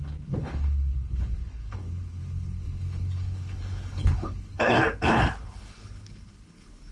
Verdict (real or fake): fake